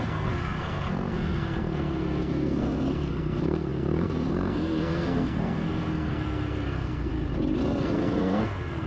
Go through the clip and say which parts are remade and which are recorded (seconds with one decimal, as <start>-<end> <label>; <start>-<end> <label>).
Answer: 0.0-7.1 remade; 7.1-7.8 recorded; 7.8-8.9 remade